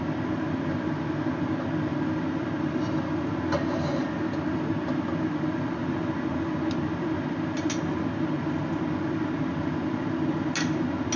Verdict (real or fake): real